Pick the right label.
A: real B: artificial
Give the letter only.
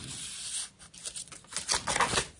A